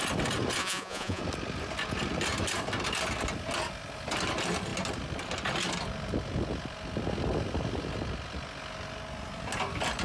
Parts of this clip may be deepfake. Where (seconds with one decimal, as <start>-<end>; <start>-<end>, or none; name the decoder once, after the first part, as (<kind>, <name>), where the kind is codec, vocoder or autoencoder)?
0.6-1.2 (vocoder, Vocos)